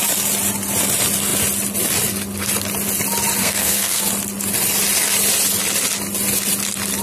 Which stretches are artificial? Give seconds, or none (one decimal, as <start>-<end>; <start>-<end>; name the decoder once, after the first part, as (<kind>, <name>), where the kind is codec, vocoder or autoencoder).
3.4-4.0 (codec, SNAC)